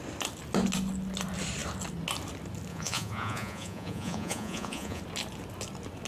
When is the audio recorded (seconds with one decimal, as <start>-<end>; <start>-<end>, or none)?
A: 0.0-2.7; 5.0-6.1